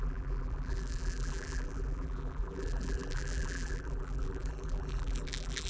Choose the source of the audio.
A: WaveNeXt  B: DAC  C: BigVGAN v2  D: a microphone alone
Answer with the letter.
C